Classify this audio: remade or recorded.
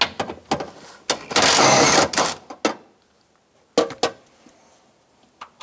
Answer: recorded